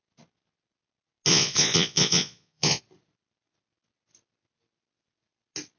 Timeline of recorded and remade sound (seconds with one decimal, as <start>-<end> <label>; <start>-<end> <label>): 0.0-1.3 recorded; 1.3-2.8 remade; 2.8-5.8 recorded